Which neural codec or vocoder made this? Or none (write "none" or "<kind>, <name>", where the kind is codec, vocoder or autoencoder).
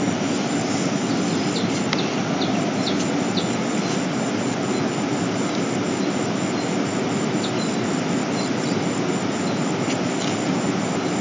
none